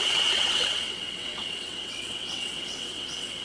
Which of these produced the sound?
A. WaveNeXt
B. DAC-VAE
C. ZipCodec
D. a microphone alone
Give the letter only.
A